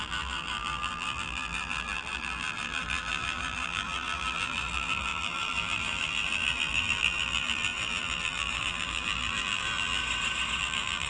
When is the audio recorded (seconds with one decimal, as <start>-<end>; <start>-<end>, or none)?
10.0-10.6